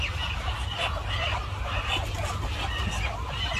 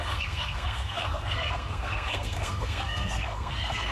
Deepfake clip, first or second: second